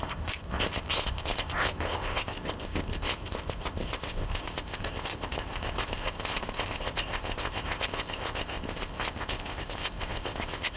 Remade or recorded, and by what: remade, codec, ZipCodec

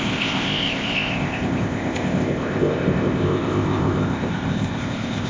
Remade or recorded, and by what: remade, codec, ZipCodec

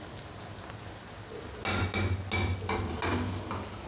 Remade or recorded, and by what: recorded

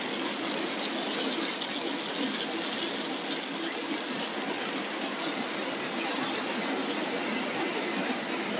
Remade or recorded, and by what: recorded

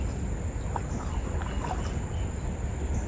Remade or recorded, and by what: recorded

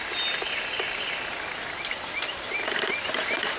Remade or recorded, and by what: recorded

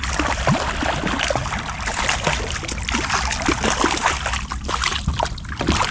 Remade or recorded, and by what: recorded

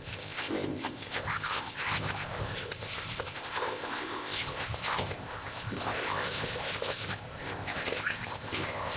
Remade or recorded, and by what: remade, codec, ZipCodec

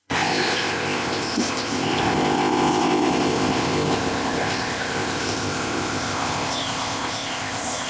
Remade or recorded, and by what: remade, codec, ZipCodec